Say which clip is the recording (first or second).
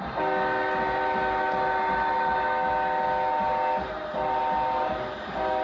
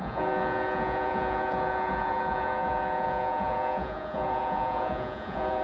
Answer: first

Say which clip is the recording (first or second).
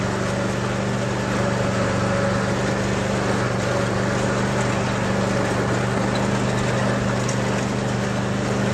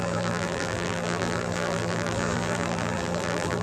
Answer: first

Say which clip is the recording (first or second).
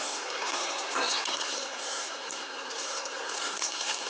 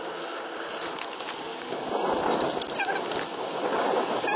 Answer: second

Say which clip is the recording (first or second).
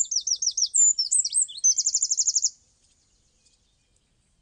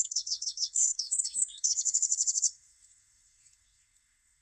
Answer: first